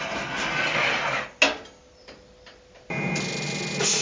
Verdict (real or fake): real